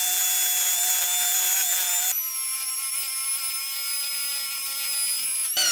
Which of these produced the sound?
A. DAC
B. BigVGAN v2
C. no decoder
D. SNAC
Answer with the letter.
C